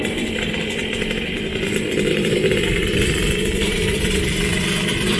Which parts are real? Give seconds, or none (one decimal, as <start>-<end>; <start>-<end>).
0.0-1.5; 4.6-5.2